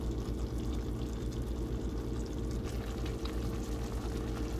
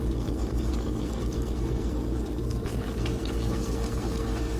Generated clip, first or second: second